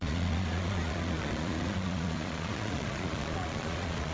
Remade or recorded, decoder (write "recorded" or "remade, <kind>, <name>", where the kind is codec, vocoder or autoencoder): remade, vocoder, Vocos